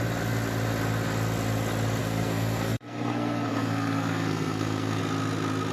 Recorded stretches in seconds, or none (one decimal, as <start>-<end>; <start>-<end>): 0.0-2.0; 5.0-5.7